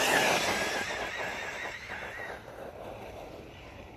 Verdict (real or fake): fake